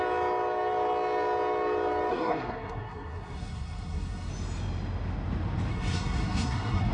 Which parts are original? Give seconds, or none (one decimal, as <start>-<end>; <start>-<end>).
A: 0.0-2.1; 4.3-5.7